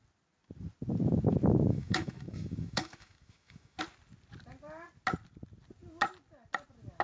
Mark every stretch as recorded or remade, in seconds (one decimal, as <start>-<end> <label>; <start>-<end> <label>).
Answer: 0.0-1.7 recorded; 1.7-3.8 remade; 3.8-7.0 recorded